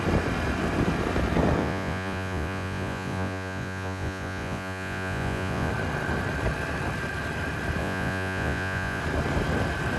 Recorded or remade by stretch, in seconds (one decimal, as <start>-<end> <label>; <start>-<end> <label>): 0.0-1.6 recorded; 1.6-5.7 remade; 5.7-7.8 recorded; 7.8-9.0 remade; 9.0-10.0 recorded